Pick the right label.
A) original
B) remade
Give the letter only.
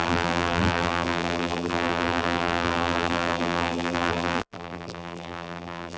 B